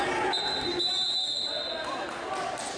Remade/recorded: recorded